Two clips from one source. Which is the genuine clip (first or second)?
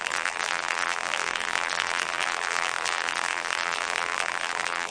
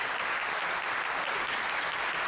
second